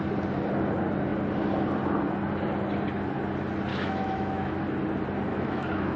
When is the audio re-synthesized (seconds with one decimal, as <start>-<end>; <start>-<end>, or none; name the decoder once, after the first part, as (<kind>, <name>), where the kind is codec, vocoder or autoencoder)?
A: 3.7-4.5 (autoencoder, DAC-VAE); 5.3-6.0